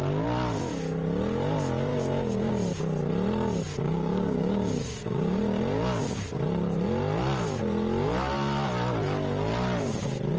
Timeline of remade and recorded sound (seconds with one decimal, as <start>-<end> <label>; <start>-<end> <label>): 0.0-1.9 recorded; 1.9-2.5 remade; 2.5-3.7 recorded; 3.7-5.4 remade; 5.4-10.4 recorded